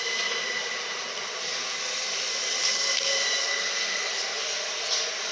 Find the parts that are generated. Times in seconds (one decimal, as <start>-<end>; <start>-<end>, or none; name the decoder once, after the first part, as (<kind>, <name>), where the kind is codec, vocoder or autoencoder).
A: 3.4-4.1 (codec, SNAC)